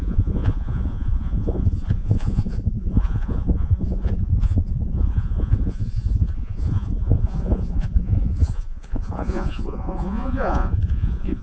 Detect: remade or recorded remade